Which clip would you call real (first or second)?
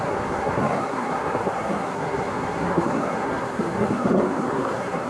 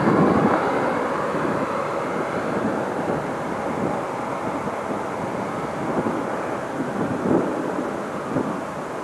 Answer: second